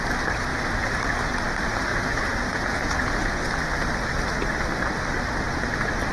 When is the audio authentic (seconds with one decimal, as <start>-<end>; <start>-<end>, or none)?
0.0-1.9; 3.3-6.1